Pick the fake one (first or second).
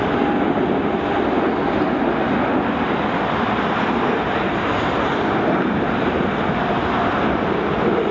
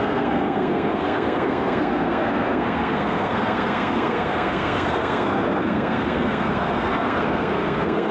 second